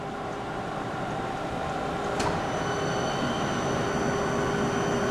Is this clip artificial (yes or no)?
no